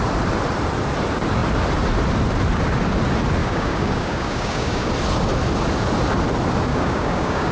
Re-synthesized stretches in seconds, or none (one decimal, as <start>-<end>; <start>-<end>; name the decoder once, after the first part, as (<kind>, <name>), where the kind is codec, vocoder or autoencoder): 3.4-4.9 (codec, DAC); 6.7-7.5